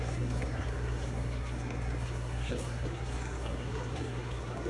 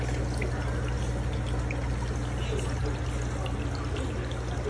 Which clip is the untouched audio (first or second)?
second